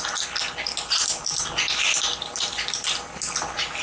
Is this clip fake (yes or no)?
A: no